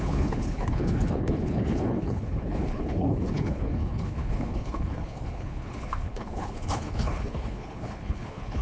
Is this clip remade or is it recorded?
remade